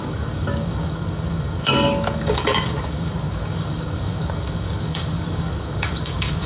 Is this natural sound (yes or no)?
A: no